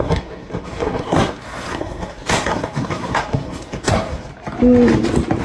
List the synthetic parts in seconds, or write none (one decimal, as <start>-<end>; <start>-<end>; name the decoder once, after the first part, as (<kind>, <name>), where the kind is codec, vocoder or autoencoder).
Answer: 0.0-4.3 (codec, SNAC)